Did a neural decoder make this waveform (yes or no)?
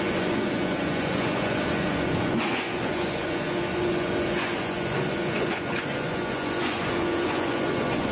yes